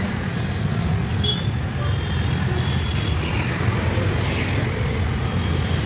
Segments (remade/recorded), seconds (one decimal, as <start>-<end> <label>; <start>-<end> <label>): 0.0-5.9 recorded